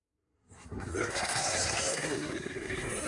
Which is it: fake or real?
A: fake